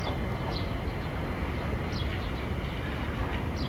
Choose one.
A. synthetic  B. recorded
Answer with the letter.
B